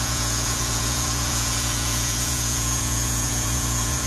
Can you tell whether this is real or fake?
fake